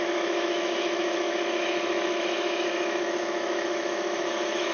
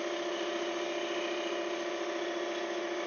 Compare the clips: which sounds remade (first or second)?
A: first